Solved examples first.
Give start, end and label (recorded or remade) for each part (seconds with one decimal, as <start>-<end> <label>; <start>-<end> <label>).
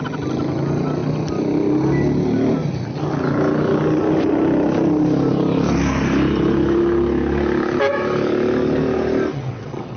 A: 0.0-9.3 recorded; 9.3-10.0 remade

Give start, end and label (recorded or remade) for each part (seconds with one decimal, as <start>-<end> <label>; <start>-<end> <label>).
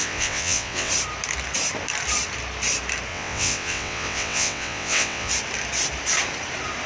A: 0.0-0.9 remade; 0.9-3.1 recorded; 3.1-5.3 remade; 5.3-6.9 recorded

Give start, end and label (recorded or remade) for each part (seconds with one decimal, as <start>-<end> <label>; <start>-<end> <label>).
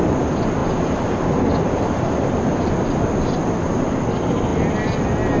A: 0.0-5.4 recorded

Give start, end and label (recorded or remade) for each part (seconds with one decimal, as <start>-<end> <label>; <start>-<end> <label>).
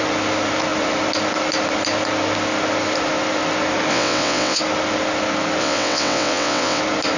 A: 0.0-3.9 recorded; 3.9-4.6 remade; 4.6-5.6 recorded; 5.6-6.8 remade; 6.8-7.2 recorded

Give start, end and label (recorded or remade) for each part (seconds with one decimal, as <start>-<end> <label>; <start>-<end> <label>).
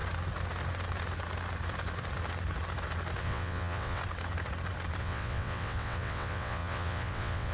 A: 0.0-3.2 recorded; 3.2-4.0 remade; 4.0-5.0 recorded; 5.0-7.5 remade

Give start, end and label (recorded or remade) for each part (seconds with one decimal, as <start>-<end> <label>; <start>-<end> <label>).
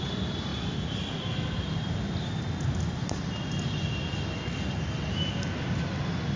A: 0.0-6.4 recorded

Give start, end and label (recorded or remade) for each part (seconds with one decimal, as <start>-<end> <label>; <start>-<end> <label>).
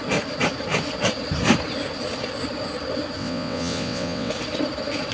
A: 0.0-3.2 recorded; 3.2-4.3 remade; 4.3-5.1 recorded